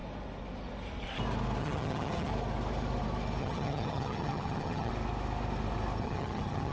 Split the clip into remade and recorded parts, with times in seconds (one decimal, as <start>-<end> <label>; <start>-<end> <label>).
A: 0.0-1.6 recorded; 1.6-2.3 remade; 2.3-3.4 recorded; 3.4-4.9 remade; 4.9-6.0 recorded; 6.0-6.7 remade